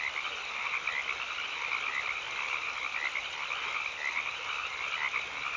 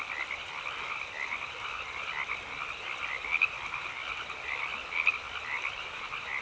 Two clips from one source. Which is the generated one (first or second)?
second